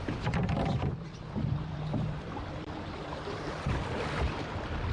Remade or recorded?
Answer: remade